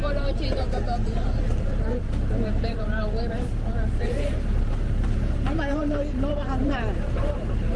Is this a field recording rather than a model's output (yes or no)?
no